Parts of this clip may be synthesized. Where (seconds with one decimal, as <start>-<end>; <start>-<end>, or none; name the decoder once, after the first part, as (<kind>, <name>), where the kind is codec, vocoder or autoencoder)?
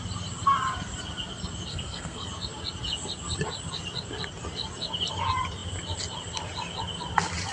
1.7-2.3 (codec, SNAC)